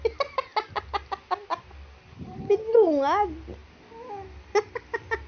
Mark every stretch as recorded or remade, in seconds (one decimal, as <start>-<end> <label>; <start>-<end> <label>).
0.0-5.3 recorded